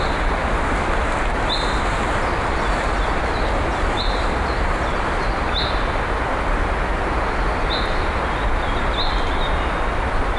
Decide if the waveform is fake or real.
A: real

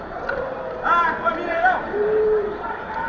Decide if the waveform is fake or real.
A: fake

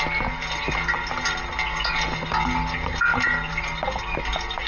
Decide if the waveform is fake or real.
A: real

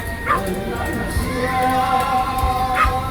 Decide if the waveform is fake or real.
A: fake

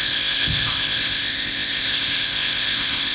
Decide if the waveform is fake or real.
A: fake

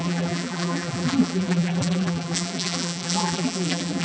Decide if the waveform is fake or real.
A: fake